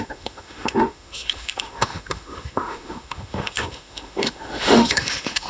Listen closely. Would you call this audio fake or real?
fake